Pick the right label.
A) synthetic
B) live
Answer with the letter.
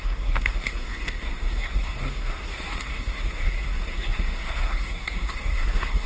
A